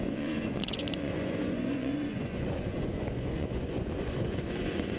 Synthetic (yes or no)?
yes